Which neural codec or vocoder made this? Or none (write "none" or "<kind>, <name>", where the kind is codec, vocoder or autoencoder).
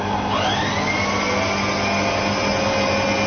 none